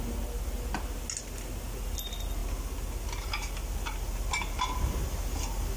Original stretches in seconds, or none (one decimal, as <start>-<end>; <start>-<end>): 0.0-5.8